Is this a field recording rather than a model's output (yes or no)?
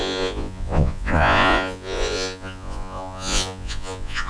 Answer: no